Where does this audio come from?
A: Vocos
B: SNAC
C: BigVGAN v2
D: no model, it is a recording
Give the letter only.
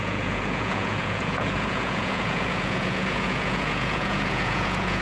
A